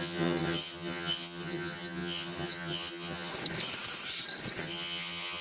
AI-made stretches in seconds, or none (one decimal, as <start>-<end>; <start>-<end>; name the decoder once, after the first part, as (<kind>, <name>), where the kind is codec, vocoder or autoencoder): 0.0-3.3 (vocoder, HiFi-GAN); 4.6-5.4